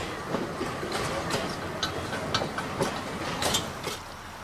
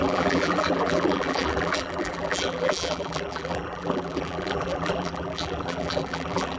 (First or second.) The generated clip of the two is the second